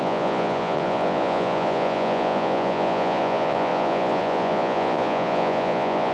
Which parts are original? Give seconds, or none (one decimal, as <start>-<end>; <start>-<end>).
none